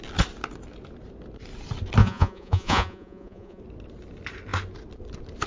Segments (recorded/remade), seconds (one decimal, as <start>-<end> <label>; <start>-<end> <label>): 0.0-2.0 recorded; 2.0-3.6 remade; 3.6-5.5 recorded